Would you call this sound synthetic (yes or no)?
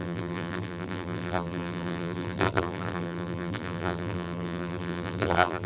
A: yes